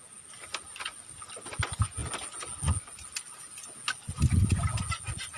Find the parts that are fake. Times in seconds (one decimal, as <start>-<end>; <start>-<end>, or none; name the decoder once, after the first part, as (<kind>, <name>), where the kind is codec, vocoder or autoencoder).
none

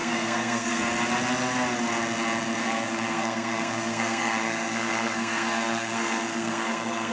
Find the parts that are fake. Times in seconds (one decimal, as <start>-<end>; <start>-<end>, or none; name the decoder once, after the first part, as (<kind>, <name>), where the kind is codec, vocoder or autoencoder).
0.0-0.8 (codec, SNAC); 2.6-7.1

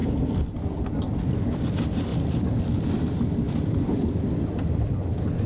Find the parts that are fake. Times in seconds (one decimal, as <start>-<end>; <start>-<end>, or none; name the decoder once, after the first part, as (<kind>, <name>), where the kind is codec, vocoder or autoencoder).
none

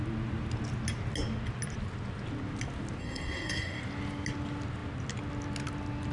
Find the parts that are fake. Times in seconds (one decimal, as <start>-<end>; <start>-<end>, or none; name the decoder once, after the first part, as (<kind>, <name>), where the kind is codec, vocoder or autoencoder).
3.0-3.8 (codec, SNAC)

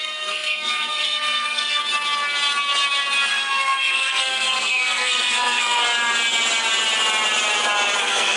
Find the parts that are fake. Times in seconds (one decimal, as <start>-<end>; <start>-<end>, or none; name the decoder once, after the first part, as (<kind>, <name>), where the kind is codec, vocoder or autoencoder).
0.0-1.8 (codec, SNAC); 3.3-5.8; 8.0-8.4